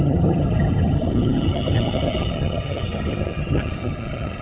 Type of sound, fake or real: fake